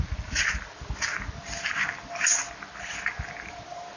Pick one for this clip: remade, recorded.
recorded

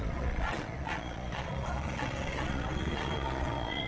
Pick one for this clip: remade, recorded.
remade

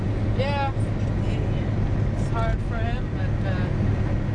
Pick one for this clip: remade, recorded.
recorded